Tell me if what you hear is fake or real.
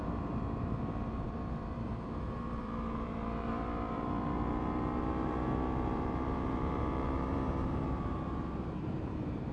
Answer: fake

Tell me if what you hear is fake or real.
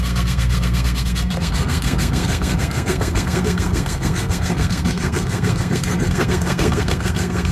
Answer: fake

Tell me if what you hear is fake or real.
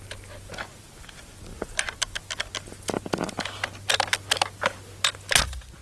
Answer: real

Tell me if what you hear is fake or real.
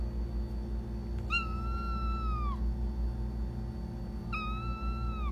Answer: real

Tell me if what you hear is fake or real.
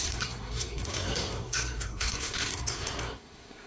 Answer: fake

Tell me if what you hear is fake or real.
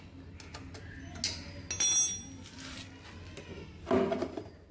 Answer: real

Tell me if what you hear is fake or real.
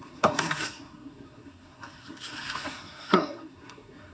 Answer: fake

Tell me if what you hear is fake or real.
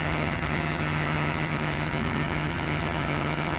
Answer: fake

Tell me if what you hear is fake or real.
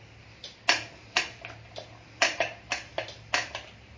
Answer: real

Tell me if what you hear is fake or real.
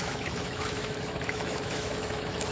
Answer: fake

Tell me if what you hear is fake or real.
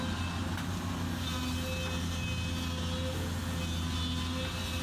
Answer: real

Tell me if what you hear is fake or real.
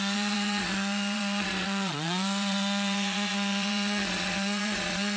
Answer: fake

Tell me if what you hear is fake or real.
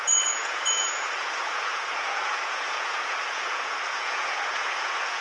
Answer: fake